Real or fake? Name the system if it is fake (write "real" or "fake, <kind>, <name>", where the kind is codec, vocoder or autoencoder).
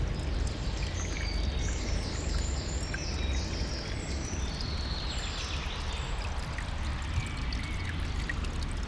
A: real